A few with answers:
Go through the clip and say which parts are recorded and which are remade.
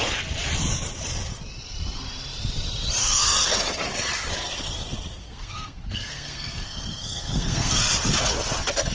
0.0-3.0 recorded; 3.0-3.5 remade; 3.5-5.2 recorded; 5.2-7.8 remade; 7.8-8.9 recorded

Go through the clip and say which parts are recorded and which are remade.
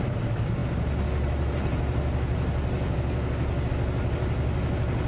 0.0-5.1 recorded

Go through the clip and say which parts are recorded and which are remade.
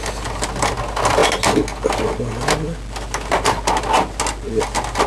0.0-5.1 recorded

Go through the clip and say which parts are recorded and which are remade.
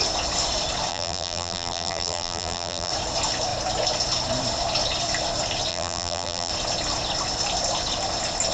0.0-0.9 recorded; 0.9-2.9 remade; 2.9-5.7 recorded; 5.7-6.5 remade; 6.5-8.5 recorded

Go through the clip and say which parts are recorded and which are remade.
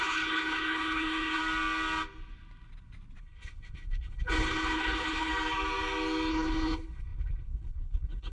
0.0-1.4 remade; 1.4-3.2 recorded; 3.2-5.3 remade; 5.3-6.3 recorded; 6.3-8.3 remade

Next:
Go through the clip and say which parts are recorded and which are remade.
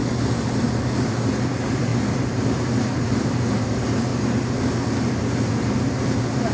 0.0-0.6 recorded; 0.6-4.1 remade; 4.1-4.9 recorded; 4.9-6.5 remade